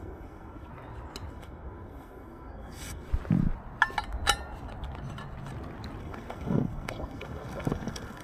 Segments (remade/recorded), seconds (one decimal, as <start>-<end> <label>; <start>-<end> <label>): 0.0-0.7 remade; 0.7-1.3 recorded; 1.3-3.1 remade; 3.1-6.0 recorded; 6.0-8.2 remade